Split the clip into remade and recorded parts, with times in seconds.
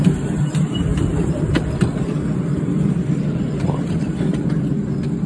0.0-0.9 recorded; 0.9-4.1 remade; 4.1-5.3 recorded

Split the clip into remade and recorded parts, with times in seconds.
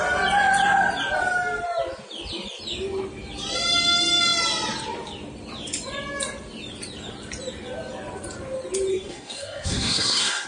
0.0-8.9 recorded; 8.9-10.5 remade